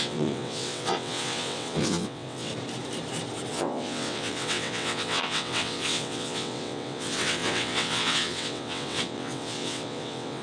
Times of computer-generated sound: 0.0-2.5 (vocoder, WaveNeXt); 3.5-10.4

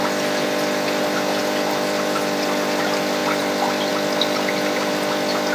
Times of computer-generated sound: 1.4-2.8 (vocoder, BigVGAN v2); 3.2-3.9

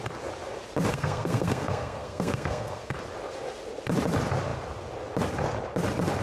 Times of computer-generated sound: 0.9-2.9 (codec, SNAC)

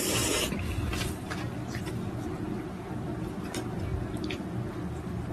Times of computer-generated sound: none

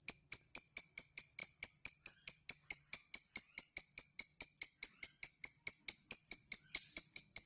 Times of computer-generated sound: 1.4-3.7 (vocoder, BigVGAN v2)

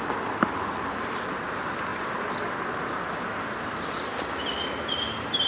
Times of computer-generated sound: none